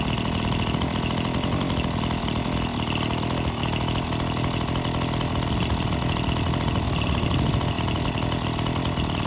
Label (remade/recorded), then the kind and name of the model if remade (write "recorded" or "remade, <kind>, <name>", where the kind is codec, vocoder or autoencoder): recorded